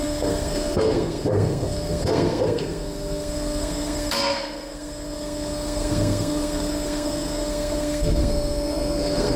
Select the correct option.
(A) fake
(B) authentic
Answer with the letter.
A